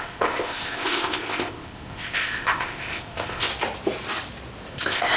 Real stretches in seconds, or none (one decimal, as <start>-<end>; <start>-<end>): 3.5-4.7